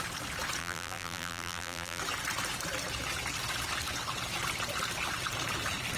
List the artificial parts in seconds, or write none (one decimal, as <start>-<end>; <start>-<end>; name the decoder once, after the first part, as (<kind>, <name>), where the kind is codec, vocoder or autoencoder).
0.6-2.0 (vocoder, BigVGAN v2)